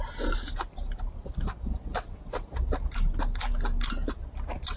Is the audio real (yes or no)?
yes